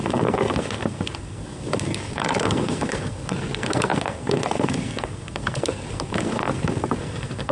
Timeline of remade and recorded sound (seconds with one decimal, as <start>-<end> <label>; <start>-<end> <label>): 0.0-7.5 remade

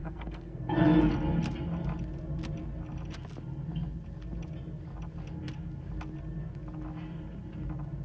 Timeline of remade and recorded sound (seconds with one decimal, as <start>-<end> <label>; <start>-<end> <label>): 0.0-1.1 remade; 1.1-8.0 recorded

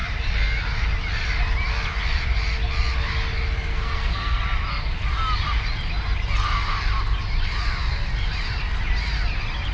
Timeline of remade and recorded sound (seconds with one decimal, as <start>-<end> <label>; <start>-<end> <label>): 0.0-3.7 recorded; 3.7-4.4 remade; 4.4-9.7 recorded

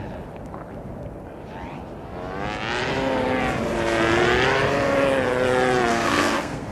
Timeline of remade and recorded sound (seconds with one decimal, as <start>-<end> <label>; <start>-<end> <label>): 0.0-5.9 recorded; 5.9-6.7 remade

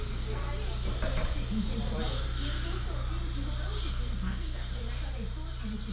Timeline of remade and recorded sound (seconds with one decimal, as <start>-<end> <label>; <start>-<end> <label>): 0.0-0.4 remade; 0.4-3.9 recorded; 3.9-4.8 remade; 4.8-5.9 recorded

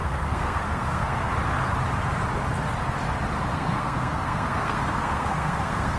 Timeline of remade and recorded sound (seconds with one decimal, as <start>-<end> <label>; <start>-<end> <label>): 0.0-1.3 remade; 1.3-3.5 recorded; 3.5-6.0 remade

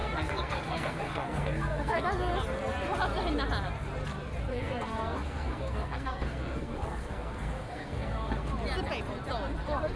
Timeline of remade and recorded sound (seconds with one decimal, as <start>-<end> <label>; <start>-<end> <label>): 0.0-2.0 remade; 2.0-4.5 recorded; 4.5-8.5 remade; 8.5-10.0 recorded